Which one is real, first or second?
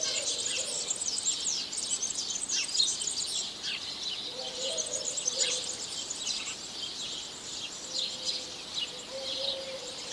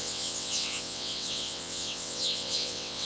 first